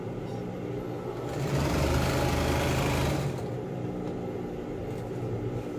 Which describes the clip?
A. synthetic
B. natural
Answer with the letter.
B